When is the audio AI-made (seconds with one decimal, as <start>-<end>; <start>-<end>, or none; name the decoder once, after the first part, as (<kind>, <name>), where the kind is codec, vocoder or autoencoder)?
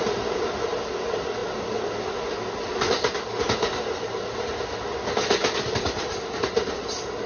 none